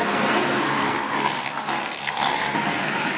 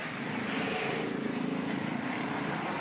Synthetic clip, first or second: first